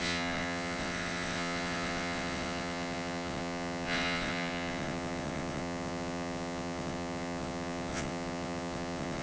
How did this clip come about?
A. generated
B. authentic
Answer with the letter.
A